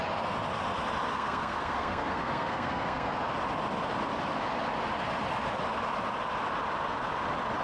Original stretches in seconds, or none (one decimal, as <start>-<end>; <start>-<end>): 0.0-1.1; 3.1-7.6